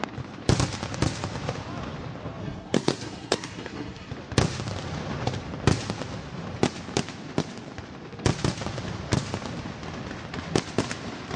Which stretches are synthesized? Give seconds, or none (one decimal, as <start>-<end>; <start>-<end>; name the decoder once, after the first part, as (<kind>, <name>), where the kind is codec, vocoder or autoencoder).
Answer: 2.4-4.1 (codec, SNAC)